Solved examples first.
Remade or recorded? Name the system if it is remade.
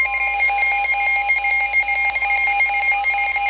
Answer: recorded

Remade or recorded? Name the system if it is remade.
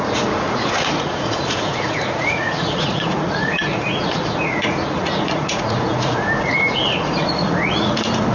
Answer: remade, vocoder, Vocos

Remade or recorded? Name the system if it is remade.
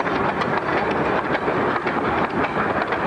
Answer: recorded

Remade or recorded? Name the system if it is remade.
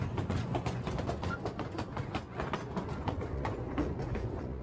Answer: remade, vocoder, Vocos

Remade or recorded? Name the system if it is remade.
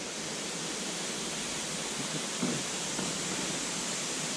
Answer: recorded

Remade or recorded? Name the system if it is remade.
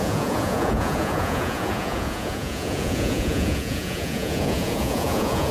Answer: remade, vocoder, Vocos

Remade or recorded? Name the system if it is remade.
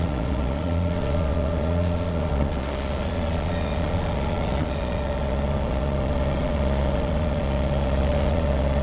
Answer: remade, vocoder, Vocos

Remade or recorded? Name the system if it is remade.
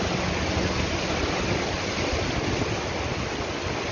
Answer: recorded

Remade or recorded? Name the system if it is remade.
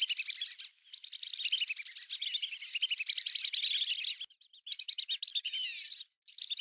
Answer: recorded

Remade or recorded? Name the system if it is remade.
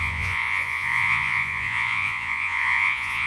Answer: remade, vocoder, Vocos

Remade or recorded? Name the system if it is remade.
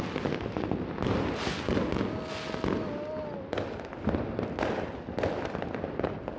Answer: recorded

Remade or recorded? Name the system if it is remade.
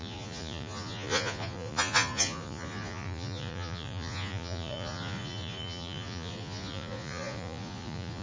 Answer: remade, vocoder, Vocos